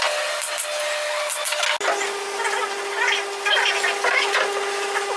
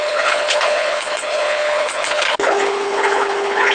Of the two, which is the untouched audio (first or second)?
first